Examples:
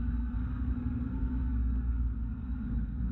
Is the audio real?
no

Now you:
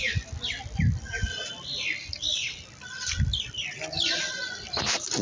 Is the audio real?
yes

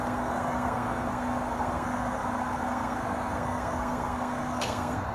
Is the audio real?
no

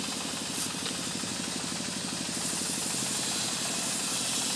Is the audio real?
yes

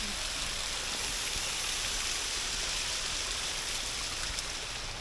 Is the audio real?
yes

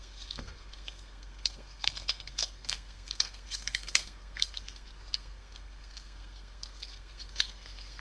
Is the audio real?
no